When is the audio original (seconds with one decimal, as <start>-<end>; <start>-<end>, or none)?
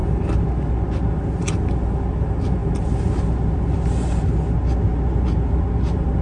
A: 0.0-6.2